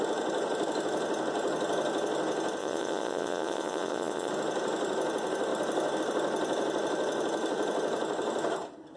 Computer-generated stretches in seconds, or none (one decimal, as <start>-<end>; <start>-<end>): 2.6-4.3